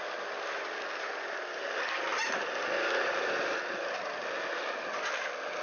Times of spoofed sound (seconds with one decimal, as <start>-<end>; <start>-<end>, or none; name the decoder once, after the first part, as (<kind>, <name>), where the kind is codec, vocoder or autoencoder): none